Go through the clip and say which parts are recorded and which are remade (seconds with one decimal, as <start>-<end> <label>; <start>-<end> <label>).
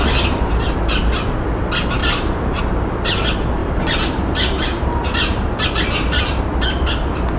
0.0-2.0 recorded; 2.0-2.6 remade; 2.6-3.6 recorded; 3.6-6.4 remade; 6.4-7.4 recorded